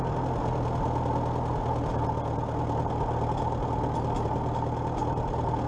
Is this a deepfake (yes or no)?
no